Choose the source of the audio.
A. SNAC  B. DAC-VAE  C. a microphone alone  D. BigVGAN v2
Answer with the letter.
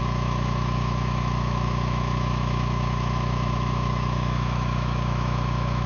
B